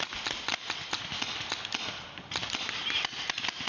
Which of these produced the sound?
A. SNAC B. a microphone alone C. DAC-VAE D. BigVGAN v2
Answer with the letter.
B